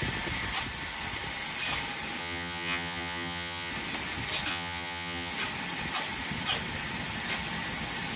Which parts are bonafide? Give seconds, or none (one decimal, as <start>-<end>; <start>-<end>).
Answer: 0.0-2.2; 3.7-4.5; 5.3-8.2